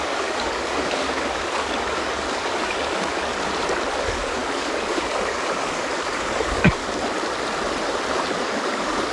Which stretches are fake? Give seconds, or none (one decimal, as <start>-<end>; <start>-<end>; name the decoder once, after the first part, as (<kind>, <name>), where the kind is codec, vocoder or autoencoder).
0.0-3.3 (codec, DAC); 3.9-6.8; 8.4-9.1